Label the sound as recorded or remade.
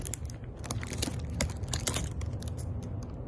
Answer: recorded